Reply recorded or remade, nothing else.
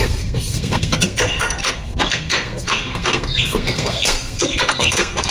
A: remade